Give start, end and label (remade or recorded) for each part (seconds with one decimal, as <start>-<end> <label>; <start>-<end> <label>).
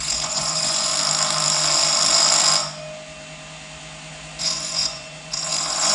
0.0-0.9 remade; 0.9-4.4 recorded; 4.4-5.9 remade